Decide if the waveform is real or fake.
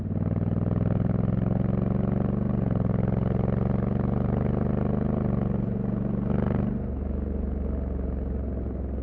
real